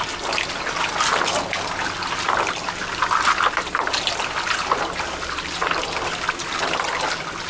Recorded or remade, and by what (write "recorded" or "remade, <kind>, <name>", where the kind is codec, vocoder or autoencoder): recorded